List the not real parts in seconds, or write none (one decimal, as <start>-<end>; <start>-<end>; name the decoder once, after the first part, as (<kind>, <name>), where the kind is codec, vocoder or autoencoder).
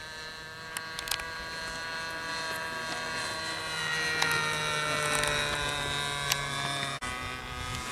none